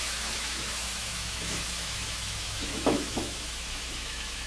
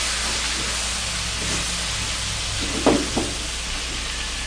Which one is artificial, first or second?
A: first